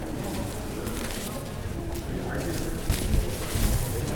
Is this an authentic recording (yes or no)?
yes